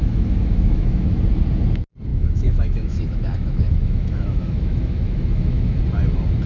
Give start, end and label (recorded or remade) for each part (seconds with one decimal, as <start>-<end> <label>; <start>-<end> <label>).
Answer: 0.0-1.2 remade; 1.2-2.1 recorded; 2.1-5.8 remade; 5.8-6.5 recorded